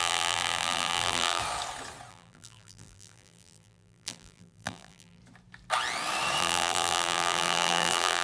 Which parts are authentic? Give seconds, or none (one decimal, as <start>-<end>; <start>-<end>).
1.4-2.1; 5.2-6.4